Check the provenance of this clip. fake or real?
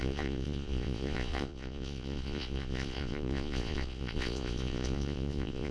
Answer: fake